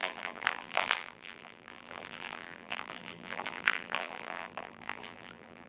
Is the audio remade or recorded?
remade